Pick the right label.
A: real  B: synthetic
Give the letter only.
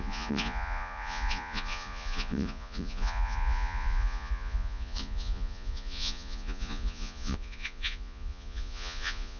B